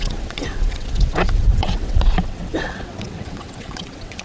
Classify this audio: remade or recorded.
remade